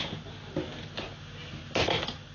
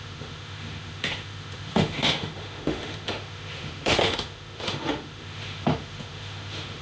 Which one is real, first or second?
first